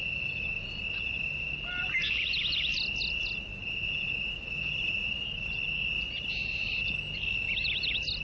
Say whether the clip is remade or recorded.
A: recorded